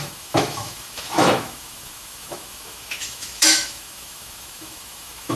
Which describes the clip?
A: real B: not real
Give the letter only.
B